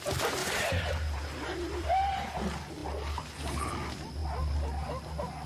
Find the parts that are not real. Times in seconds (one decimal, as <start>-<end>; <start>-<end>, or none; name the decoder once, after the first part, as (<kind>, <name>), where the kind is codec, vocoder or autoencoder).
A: 0.4-2.4 (vocoder, BigVGAN v2)